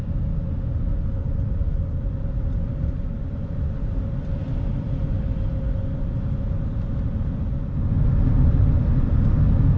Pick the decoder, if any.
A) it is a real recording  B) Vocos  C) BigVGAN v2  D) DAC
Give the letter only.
A